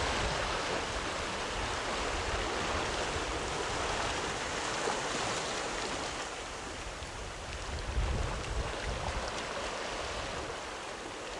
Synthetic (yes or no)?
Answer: no